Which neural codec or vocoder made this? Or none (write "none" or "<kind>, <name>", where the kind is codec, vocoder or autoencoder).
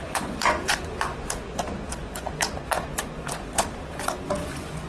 vocoder, Vocos